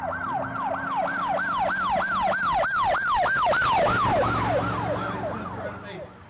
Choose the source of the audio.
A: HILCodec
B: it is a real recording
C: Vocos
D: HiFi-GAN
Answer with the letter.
B